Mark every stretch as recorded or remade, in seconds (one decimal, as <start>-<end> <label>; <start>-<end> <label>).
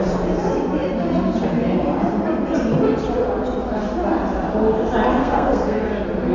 0.0-5.2 recorded; 5.2-5.8 remade; 5.8-6.3 recorded